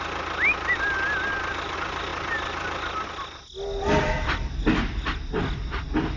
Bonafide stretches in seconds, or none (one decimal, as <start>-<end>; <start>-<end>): 0.0-6.2